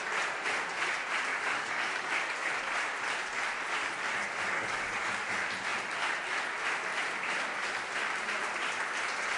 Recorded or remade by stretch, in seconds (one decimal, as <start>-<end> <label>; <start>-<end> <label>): 0.0-1.3 recorded; 1.3-2.6 remade; 2.6-3.8 recorded; 3.8-5.3 remade; 5.3-9.4 recorded